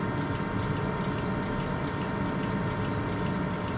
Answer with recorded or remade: recorded